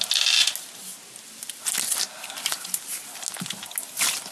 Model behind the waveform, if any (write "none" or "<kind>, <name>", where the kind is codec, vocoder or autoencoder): none